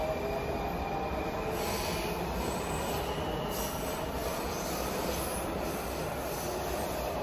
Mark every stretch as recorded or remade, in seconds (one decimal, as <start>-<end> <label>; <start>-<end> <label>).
0.0-7.2 recorded